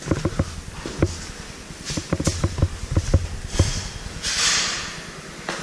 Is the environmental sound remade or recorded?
recorded